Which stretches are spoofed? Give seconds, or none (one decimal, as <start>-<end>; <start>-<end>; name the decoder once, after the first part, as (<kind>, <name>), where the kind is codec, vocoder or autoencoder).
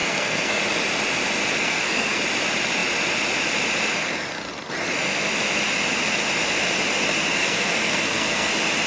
0.0-0.6 (codec, SNAC); 1.6-2.2; 7.4-8.5